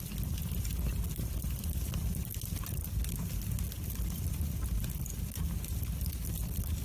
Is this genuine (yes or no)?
yes